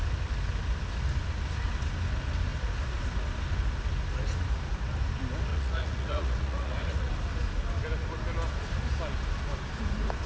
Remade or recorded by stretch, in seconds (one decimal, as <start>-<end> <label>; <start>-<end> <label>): 0.0-5.5 recorded; 5.5-7.1 remade; 7.1-10.3 recorded